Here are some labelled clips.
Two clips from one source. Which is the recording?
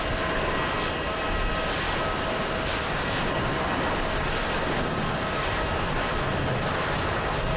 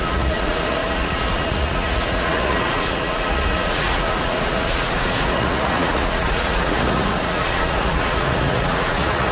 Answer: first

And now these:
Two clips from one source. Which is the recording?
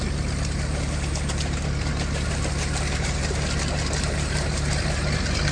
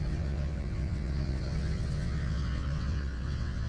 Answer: first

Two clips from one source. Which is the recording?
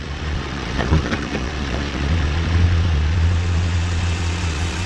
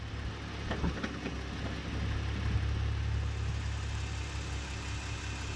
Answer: second